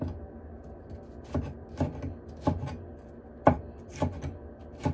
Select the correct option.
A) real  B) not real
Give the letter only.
A